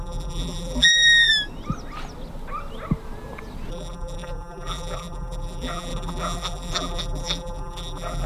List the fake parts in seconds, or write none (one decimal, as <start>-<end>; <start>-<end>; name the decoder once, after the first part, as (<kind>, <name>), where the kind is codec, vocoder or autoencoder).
0.0-1.3 (vocoder, BigVGAN v2); 3.7-8.3